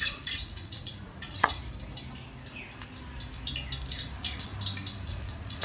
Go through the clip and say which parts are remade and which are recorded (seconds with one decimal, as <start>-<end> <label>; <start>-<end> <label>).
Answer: 0.0-1.6 remade; 1.6-3.9 recorded; 3.9-4.5 remade; 4.5-5.1 recorded; 5.1-5.6 remade